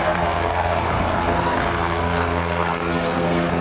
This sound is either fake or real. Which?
fake